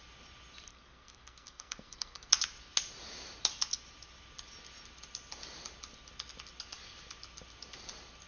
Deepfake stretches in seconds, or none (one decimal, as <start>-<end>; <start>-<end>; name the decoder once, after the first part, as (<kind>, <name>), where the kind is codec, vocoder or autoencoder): 0.7-2.3 (codec, SNAC)